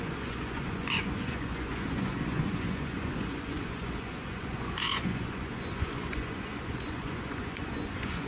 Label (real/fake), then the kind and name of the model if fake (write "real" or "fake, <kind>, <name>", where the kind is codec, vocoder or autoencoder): fake, vocoder, Vocos